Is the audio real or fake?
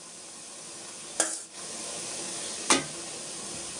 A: real